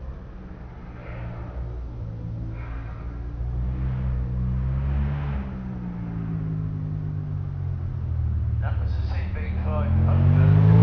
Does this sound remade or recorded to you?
recorded